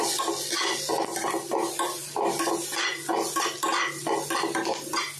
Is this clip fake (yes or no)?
no